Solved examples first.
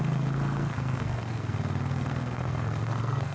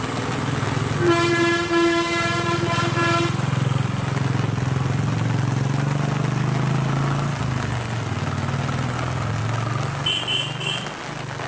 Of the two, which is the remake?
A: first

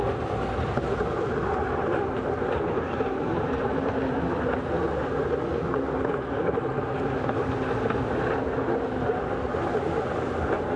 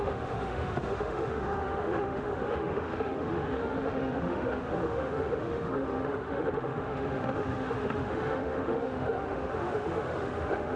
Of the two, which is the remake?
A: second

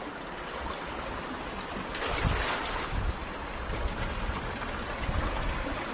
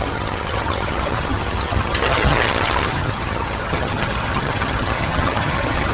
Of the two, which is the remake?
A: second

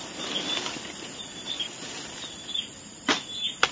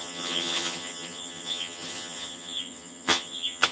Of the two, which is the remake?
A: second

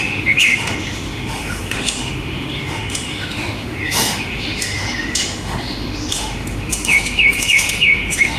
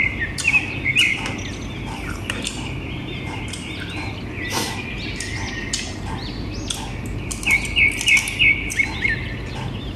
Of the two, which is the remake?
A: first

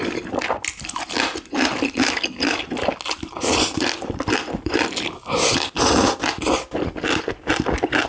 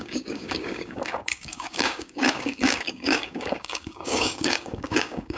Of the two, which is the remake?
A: second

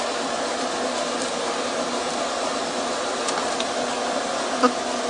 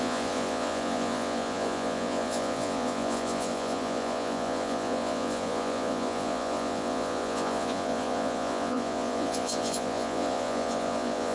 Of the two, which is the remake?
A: second